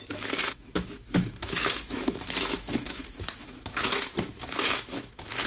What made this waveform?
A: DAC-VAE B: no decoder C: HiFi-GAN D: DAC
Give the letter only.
A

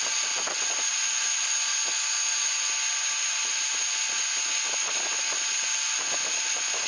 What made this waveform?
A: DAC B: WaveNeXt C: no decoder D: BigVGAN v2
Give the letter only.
C